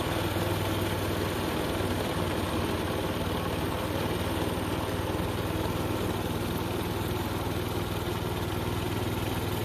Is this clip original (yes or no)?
yes